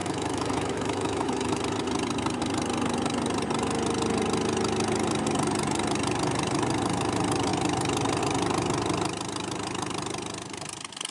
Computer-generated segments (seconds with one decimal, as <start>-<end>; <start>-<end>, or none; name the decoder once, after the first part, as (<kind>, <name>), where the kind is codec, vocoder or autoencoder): 0.0-1.6 (autoencoder, DAC-VAE)